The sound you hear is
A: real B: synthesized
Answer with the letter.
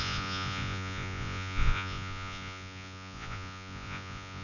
B